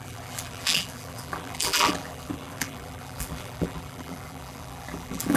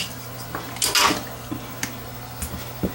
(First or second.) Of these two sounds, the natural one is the second